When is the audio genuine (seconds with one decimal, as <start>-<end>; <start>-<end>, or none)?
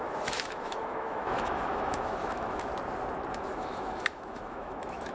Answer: 2.7-3.3